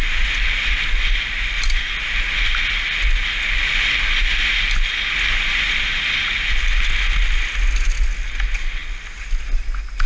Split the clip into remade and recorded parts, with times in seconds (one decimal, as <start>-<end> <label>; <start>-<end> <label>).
0.0-10.1 recorded